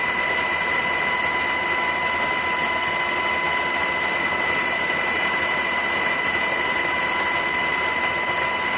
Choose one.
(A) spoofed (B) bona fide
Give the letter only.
B